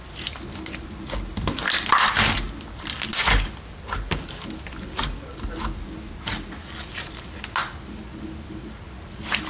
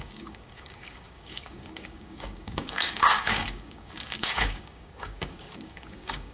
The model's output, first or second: second